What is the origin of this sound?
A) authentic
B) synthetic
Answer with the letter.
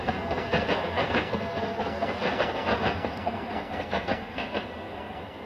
B